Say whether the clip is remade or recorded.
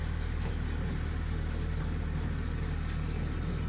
recorded